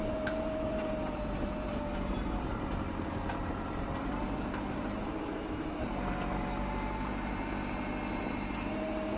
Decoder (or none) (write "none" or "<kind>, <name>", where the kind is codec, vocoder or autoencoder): vocoder, BigVGAN v2